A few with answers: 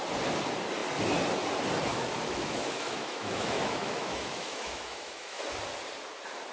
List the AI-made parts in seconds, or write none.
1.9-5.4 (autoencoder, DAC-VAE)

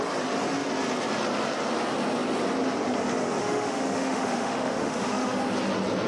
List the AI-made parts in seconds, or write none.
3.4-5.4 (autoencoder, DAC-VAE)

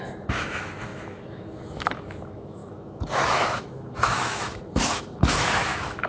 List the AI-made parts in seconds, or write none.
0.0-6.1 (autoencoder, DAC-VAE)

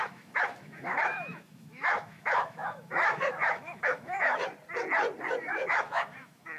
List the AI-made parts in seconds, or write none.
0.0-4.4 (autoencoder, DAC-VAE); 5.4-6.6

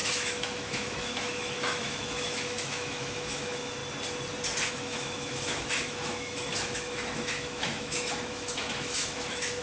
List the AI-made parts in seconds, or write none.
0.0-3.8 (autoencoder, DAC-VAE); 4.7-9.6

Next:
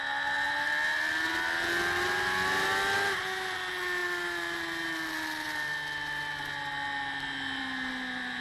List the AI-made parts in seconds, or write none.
none